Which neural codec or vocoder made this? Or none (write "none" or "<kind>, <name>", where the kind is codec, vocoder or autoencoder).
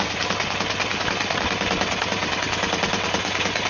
none